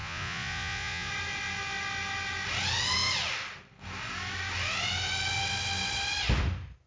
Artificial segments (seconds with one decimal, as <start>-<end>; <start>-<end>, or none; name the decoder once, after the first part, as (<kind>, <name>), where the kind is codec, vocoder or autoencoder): 0.0-1.1 (vocoder, Vocos)

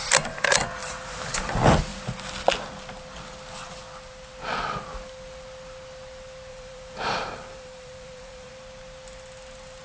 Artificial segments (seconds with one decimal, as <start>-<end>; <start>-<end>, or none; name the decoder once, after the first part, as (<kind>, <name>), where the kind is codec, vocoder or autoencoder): 0.8-1.4 (vocoder, BigVGAN v2); 6.5-8.5